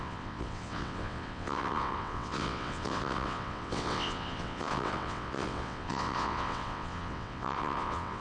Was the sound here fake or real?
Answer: fake